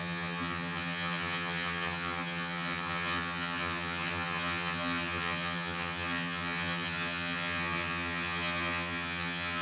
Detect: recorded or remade remade